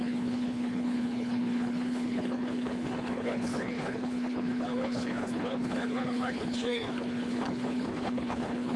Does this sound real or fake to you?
fake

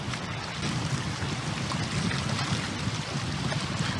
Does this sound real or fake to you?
real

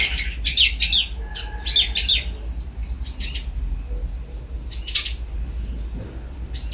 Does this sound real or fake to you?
real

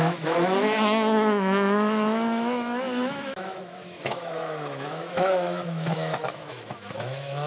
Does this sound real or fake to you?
fake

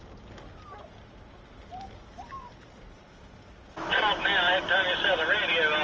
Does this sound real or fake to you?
real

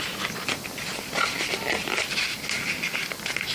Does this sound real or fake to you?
real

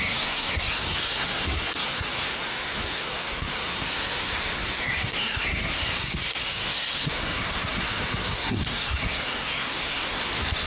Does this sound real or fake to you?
fake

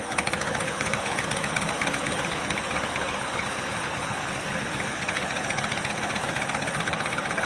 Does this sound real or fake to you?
fake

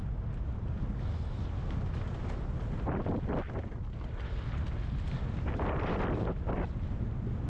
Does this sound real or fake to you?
real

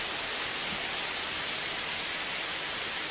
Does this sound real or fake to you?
real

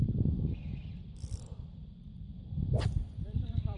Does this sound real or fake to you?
fake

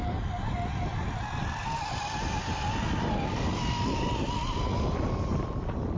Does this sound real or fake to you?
real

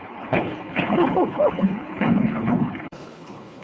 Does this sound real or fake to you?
fake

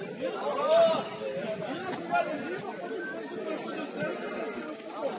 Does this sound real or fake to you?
real